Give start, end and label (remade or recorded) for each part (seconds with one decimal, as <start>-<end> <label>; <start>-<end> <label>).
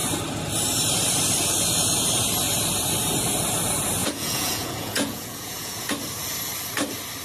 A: 0.0-4.0 recorded; 4.0-5.9 remade; 5.9-7.2 recorded